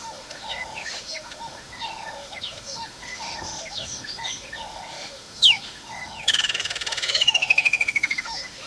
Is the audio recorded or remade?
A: remade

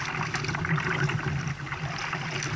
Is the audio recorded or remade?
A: recorded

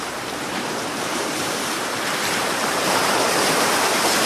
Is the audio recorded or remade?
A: remade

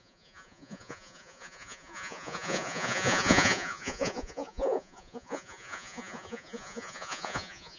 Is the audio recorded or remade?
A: remade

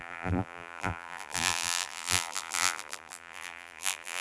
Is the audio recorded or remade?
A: remade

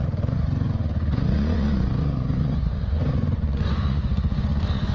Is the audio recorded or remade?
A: remade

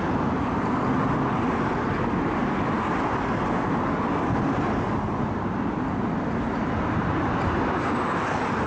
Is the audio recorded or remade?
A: recorded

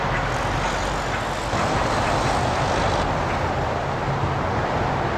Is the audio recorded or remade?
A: recorded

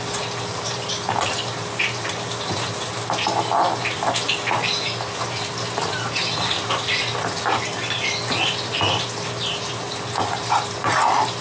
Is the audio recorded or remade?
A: recorded